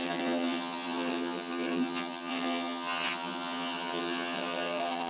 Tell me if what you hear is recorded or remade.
remade